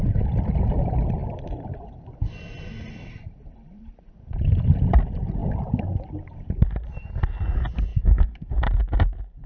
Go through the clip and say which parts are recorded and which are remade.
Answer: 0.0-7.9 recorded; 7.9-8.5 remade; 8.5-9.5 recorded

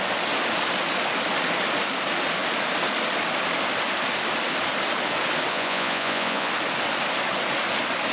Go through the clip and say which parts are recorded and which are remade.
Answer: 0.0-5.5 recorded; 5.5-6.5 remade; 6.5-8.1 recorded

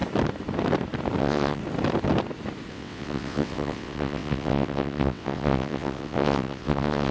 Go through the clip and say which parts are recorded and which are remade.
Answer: 0.0-1.2 recorded; 1.2-1.6 remade; 1.6-2.7 recorded; 2.7-7.1 remade